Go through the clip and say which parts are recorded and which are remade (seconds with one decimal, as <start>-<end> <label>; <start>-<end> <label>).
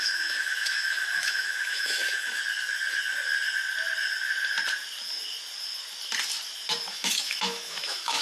0.0-2.4 remade; 2.4-6.9 recorded; 6.9-8.2 remade